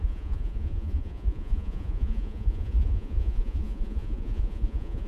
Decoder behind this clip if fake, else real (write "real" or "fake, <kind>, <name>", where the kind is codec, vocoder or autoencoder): fake, vocoder, Vocos